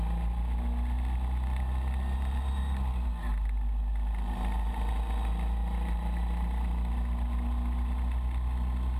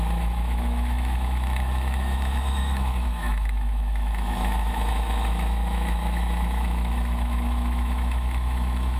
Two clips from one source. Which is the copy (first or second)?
second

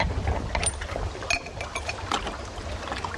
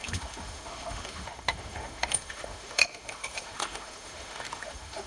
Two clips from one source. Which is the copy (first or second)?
second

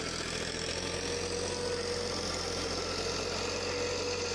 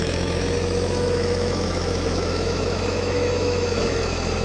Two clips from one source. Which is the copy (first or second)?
second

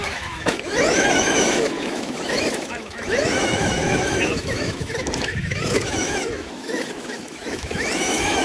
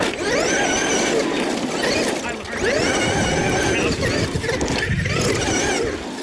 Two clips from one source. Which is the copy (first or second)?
first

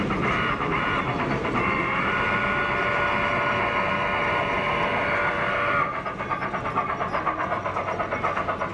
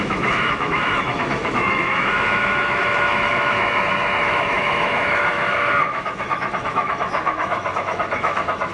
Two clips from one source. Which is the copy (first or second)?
second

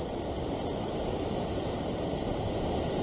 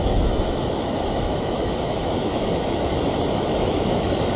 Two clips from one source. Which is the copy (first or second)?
second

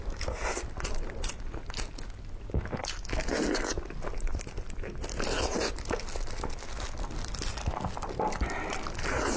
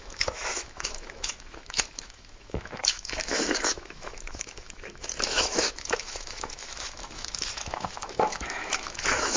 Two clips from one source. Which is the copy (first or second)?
second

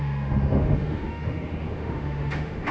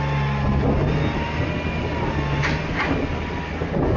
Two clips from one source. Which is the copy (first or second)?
first